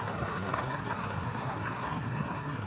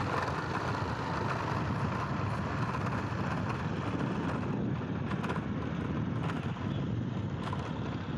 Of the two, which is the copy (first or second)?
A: first